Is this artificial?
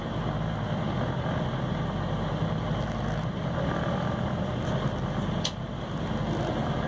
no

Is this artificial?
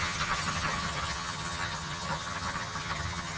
yes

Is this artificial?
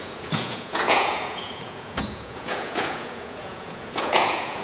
yes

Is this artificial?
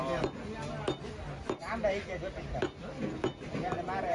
no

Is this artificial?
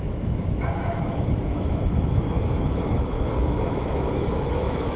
yes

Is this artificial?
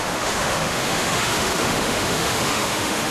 yes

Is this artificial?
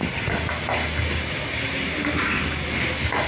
no